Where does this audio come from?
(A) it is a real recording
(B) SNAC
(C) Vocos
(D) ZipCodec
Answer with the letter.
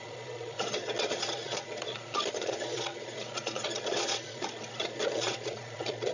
C